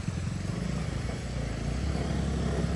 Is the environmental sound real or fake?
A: real